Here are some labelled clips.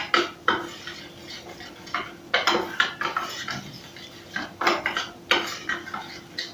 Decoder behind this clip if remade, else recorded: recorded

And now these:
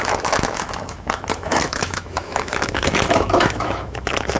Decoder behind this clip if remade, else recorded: remade, autoencoder, DAC-VAE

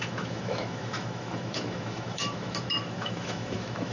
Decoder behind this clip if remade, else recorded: remade, autoencoder, DAC-VAE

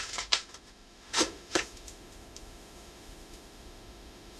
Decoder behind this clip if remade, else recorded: remade, autoencoder, DAC-VAE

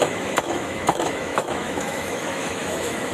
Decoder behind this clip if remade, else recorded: remade, autoencoder, DAC-VAE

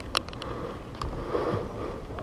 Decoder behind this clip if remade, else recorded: recorded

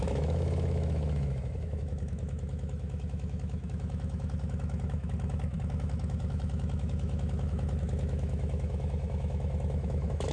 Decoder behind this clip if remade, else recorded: remade, autoencoder, DAC-VAE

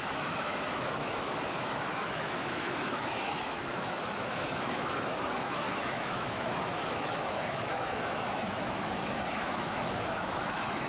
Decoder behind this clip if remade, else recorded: remade, autoencoder, DAC-VAE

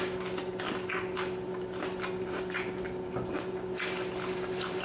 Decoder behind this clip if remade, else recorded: recorded